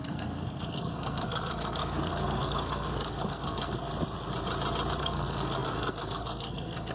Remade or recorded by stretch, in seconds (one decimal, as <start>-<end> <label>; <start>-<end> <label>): 0.0-3.9 remade; 3.9-5.0 recorded; 5.0-6.9 remade

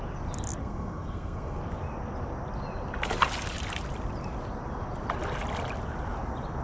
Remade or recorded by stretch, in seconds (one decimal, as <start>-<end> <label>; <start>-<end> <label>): 0.0-0.6 recorded; 0.6-1.6 remade; 1.6-6.6 recorded

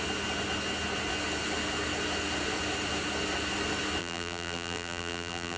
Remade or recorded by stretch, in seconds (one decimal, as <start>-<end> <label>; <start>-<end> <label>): 0.0-4.0 recorded; 4.0-5.6 remade

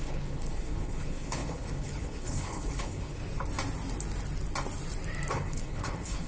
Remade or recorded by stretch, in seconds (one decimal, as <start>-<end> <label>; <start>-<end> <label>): 0.0-3.2 remade; 3.2-5.3 recorded; 5.3-6.3 remade

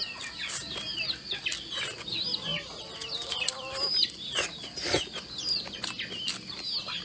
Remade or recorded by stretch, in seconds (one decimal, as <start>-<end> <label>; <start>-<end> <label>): 0.0-7.0 recorded

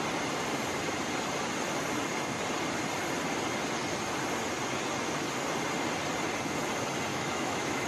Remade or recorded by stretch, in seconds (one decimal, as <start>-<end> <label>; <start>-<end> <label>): 0.0-7.1 recorded; 7.1-7.9 remade

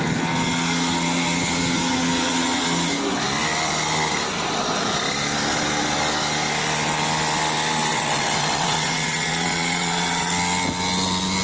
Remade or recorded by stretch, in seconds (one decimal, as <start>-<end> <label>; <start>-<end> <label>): 0.0-7.9 recorded; 7.9-10.3 remade; 10.3-11.4 recorded